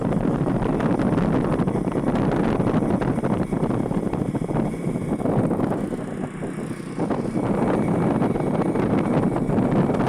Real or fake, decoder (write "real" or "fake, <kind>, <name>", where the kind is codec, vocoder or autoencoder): real